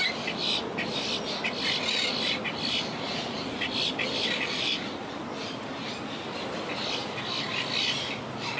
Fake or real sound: real